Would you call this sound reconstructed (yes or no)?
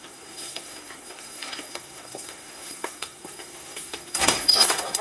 yes